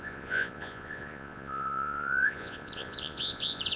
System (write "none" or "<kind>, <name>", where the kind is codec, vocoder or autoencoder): vocoder, Vocos